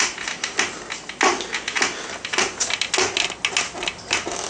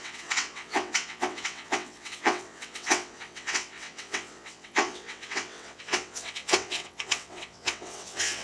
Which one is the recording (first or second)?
first